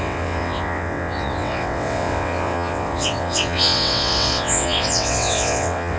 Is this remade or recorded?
remade